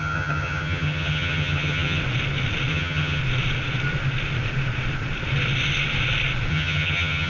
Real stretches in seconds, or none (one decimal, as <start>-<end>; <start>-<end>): 2.0-2.7; 3.2-6.5